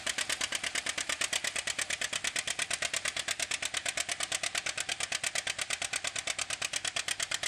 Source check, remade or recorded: recorded